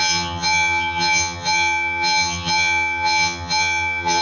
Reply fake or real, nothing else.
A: fake